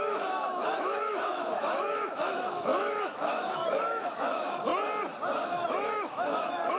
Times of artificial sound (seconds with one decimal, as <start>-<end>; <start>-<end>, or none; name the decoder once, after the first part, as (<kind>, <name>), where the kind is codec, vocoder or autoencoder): 0.0-4.7 (autoencoder, DAC-VAE); 5.4-6.8